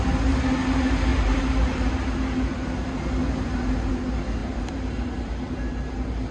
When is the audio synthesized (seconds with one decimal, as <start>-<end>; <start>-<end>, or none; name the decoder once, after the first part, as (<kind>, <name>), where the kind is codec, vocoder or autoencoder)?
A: 1.1-1.9 (vocoder, BigVGAN v2); 3.2-3.9; 4.4-5.1